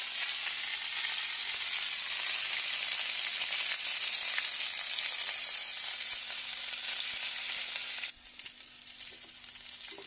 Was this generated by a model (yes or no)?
no